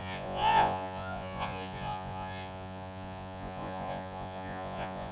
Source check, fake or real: fake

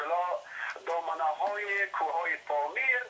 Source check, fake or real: real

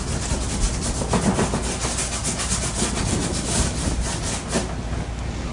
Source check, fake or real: real